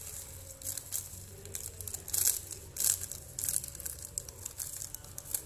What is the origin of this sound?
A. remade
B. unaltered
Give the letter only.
B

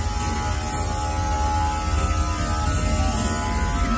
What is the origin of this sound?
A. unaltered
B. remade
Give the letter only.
A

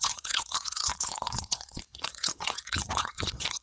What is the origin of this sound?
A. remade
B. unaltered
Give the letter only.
A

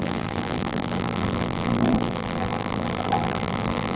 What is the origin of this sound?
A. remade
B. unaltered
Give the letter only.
A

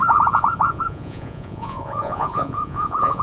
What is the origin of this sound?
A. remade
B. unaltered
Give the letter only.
A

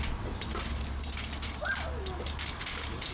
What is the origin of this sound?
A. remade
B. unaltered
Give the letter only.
B